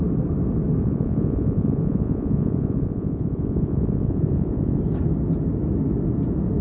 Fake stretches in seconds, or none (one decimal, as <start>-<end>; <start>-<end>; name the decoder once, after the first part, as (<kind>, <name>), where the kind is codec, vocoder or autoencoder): 0.8-4.8 (vocoder, Vocos)